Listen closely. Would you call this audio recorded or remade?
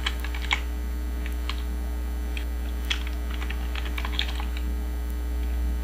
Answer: recorded